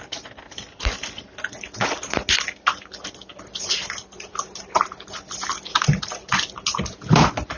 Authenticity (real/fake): real